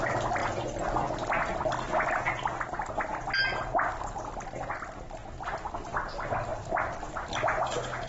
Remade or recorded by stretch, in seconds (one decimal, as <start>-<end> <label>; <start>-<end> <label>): 0.0-8.1 recorded